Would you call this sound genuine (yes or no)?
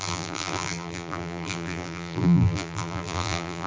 no